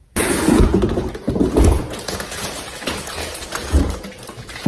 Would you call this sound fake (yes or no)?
yes